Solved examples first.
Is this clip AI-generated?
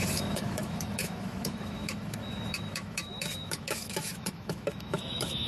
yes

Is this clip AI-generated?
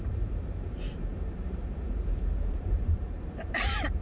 yes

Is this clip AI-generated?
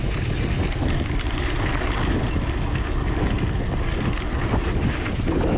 no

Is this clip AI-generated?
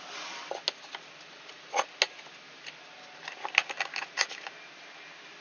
no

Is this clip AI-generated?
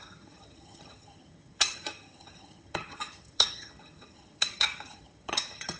yes